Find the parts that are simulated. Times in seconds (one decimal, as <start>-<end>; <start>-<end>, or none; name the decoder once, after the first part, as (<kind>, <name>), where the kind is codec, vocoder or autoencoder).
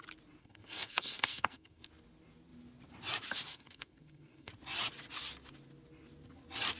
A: 0.4-1.9 (codec, SNAC); 3.5-4.5